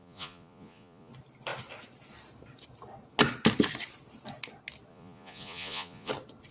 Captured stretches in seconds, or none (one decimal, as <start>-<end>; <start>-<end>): 1.1-4.9; 6.1-6.5